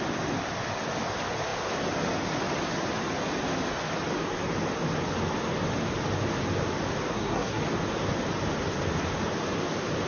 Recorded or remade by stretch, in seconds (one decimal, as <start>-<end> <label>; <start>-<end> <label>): 0.0-7.1 recorded; 7.1-7.6 remade; 7.6-10.1 recorded